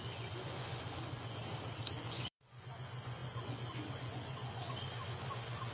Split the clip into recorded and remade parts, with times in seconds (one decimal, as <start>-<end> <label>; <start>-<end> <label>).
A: 0.0-1.4 remade; 1.4-1.9 recorded; 1.9-5.7 remade

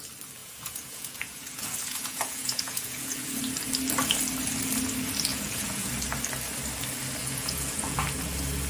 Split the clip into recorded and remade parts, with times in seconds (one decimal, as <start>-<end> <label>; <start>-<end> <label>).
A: 0.0-0.4 recorded; 0.4-3.4 remade; 3.4-5.3 recorded; 5.3-5.9 remade; 5.9-7.2 recorded; 7.2-8.0 remade; 8.0-8.7 recorded

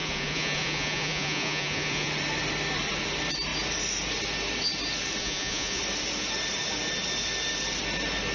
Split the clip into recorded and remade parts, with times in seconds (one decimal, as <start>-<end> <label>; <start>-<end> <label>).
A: 0.0-2.1 remade; 2.1-5.2 recorded; 5.2-5.8 remade; 5.8-8.3 recorded